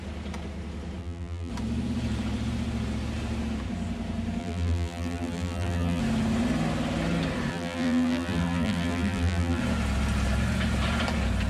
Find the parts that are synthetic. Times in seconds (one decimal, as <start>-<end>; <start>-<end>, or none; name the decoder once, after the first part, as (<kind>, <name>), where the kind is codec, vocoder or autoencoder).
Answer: 1.0-1.5 (vocoder, BigVGAN v2); 4.4-6.0; 7.5-9.6